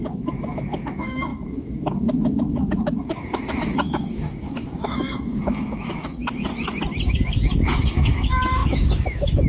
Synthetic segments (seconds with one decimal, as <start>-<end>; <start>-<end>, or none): 0.0-6.5; 7.1-9.5